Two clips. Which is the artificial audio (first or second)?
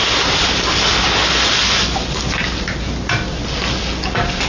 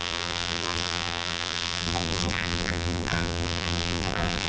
second